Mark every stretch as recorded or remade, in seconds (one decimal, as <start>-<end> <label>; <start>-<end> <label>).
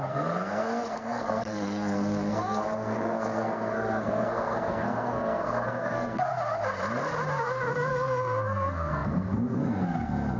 0.0-6.3 remade; 6.3-7.7 recorded; 7.7-10.4 remade